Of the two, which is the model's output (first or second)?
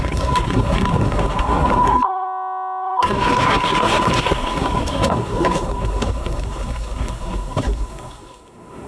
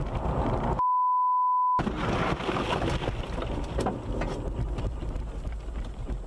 first